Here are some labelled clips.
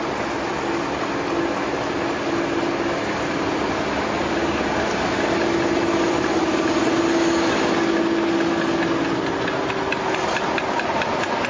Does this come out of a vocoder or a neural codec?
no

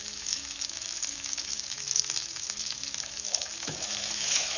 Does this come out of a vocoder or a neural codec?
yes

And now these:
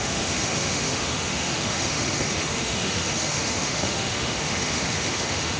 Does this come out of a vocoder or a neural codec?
yes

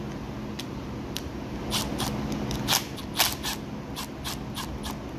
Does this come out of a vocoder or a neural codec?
no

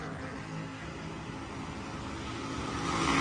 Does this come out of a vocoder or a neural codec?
no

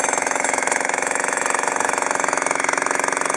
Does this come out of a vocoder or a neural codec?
yes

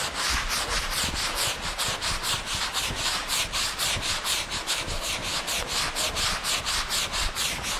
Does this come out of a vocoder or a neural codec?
no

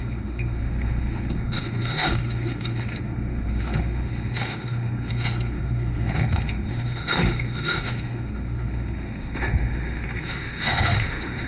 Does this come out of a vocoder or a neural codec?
yes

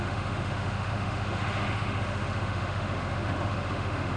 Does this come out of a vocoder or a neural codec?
yes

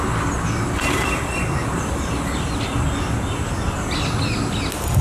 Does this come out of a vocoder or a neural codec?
no